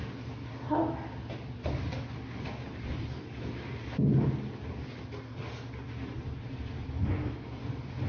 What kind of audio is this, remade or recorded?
recorded